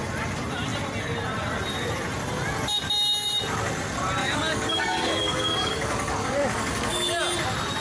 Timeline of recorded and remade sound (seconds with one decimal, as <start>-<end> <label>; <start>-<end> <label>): 0.0-4.2 recorded; 4.2-7.2 remade; 7.2-7.8 recorded